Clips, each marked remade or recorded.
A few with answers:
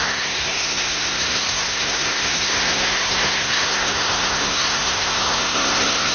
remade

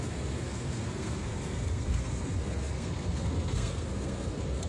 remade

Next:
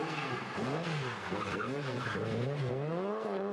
remade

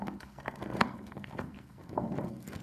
remade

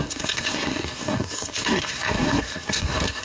remade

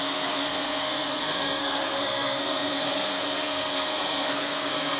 remade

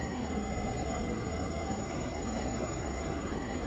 remade